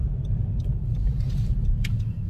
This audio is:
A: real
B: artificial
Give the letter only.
B